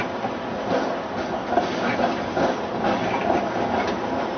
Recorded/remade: recorded